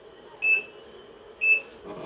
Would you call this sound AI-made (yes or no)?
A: no